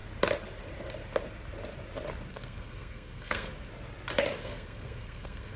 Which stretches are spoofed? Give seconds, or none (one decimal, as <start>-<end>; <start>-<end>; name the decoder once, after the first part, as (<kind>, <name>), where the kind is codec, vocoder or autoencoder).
2.3-3.7 (codec, SNAC); 4.4-5.6